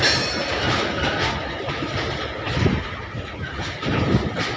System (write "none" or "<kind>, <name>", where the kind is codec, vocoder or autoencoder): none